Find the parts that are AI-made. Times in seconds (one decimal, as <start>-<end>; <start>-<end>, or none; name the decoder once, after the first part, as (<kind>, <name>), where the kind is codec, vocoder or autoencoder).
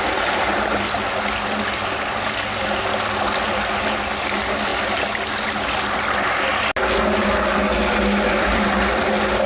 none